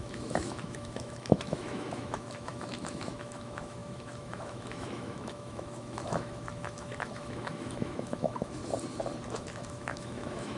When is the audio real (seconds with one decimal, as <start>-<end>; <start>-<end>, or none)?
8.6-9.3